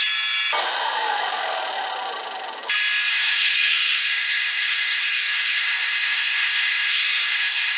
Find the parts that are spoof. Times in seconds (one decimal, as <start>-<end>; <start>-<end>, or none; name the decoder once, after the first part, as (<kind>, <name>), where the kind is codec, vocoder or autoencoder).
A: 3.1-7.8 (codec, SNAC)